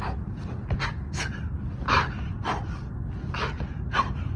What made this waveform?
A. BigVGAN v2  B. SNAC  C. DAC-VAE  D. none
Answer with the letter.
D